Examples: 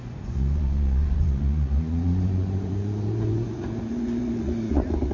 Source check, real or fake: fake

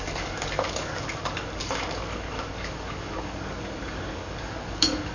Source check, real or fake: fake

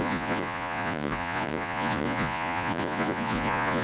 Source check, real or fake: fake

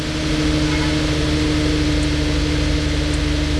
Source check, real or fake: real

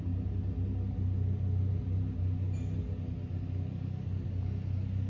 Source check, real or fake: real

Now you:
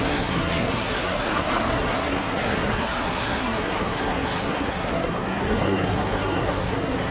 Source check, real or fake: fake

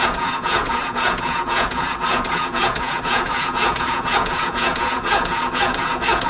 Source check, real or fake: fake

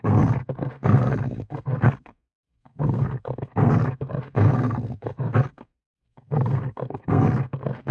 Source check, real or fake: fake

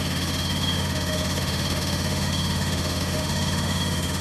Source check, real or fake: fake